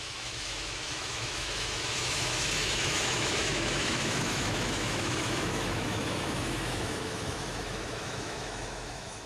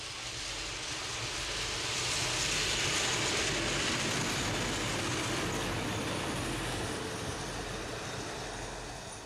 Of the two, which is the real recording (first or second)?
second